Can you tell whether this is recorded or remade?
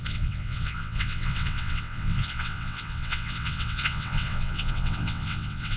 remade